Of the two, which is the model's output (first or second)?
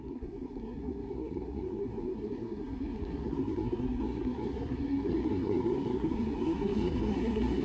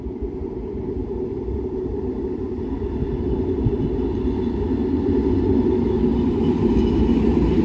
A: first